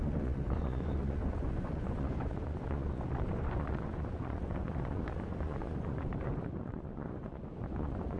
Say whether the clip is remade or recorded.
remade